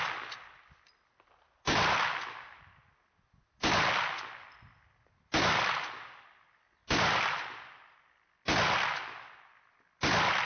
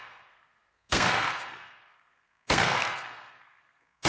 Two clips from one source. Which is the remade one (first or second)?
second